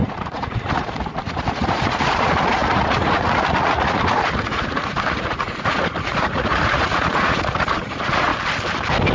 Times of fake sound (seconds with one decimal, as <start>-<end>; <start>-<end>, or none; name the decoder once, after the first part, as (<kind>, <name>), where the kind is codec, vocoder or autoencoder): 0.0-8.3 (vocoder, Vocos)